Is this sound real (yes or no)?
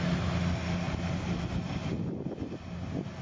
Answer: yes